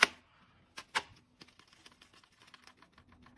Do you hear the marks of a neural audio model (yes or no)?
no